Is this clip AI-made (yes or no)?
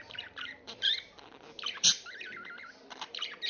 yes